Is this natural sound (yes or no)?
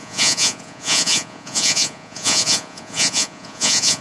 no